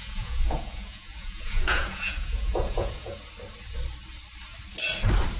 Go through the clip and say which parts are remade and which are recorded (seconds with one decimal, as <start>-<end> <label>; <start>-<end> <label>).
0.0-3.2 remade; 3.2-5.4 recorded